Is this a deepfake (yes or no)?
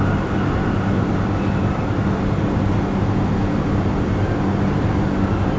no